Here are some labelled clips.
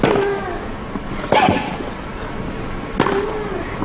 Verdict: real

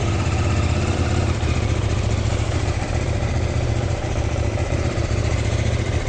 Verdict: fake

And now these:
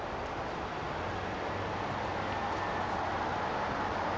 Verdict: real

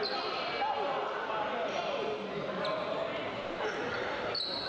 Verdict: real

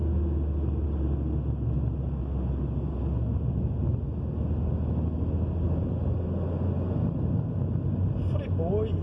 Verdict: real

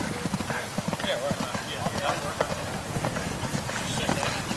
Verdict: real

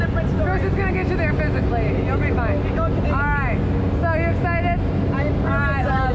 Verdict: real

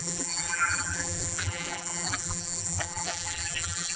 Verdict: fake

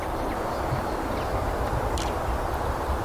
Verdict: real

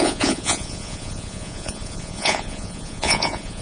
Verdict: fake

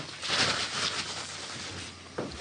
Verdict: real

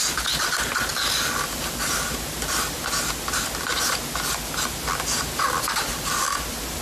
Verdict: real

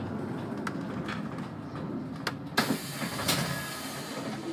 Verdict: real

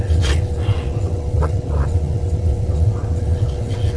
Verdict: fake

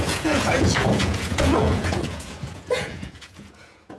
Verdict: fake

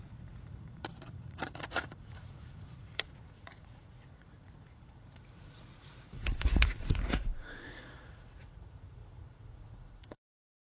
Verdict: fake